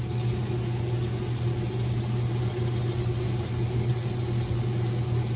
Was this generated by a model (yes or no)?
no